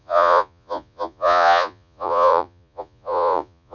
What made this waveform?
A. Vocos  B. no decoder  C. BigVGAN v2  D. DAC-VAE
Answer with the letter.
A